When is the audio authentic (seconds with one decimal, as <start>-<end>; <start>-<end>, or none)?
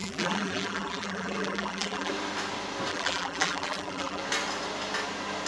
2.1-2.9; 4.2-5.5